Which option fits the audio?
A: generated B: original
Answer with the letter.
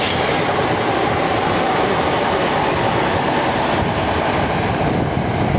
B